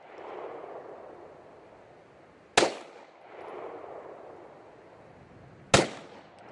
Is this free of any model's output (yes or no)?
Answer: yes